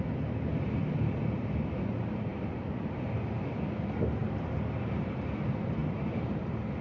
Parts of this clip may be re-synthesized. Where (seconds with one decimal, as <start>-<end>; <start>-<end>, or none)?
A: 2.3-3.7; 4.2-4.8; 5.8-6.8